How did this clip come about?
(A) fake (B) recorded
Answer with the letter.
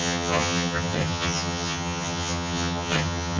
A